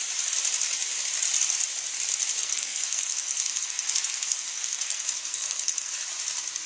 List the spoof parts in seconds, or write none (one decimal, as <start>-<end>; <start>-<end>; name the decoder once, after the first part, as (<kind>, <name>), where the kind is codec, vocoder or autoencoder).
2.4-5.9 (codec, SNAC)